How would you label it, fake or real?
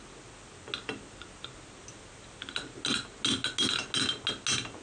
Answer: real